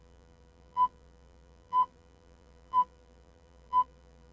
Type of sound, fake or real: fake